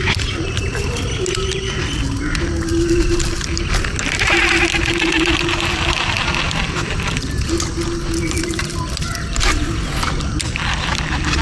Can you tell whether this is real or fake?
real